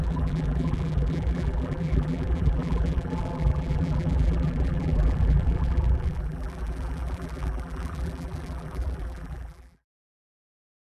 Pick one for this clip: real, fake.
fake